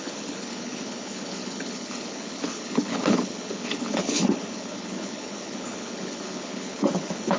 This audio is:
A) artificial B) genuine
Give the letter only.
A